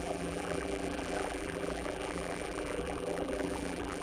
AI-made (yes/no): yes